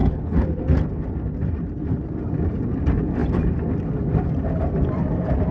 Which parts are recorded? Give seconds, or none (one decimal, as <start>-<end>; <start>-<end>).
0.6-5.5